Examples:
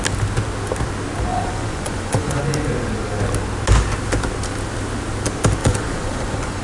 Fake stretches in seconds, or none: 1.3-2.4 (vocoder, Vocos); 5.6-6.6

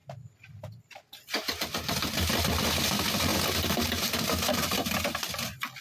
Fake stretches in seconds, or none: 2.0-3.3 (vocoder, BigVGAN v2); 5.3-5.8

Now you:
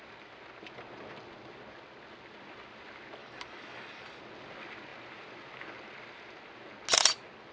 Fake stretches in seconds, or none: 3.2-4.2 (codec, DAC)

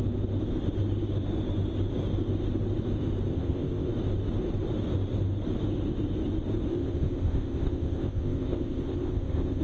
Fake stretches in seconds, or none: 3.3-3.9 (codec, ZipCodec); 6.7-9.6

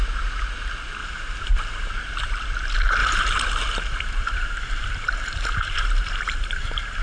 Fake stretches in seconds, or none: 1.0-1.9 (vocoder, BigVGAN v2); 3.0-7.0

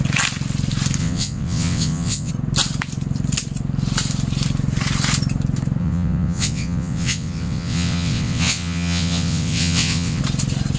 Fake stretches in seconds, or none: 1.0-2.3 (vocoder, WaveNeXt); 5.8-10.2

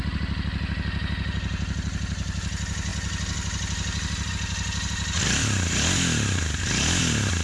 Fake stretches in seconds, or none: none

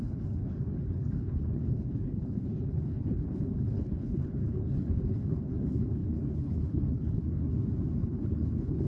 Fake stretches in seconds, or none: 0.0-7.5 (codec, HILCodec); 8.0-8.9